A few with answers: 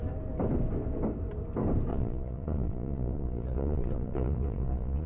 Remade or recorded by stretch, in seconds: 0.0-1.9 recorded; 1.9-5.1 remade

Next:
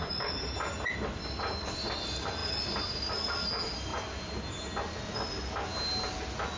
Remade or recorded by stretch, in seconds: 0.0-6.6 recorded